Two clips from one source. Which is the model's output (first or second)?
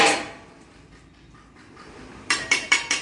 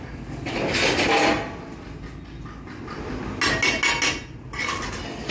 first